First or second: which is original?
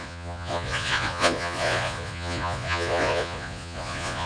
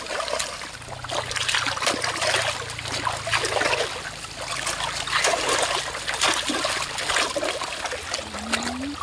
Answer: second